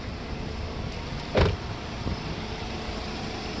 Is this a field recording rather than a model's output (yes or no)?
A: no